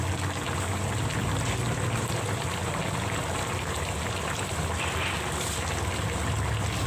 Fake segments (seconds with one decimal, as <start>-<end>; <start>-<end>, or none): none